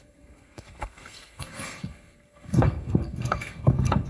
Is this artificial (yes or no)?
yes